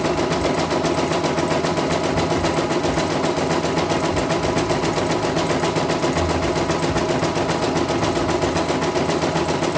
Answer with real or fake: real